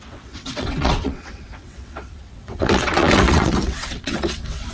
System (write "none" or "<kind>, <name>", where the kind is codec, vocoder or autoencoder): vocoder, WaveNeXt